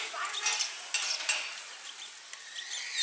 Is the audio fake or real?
real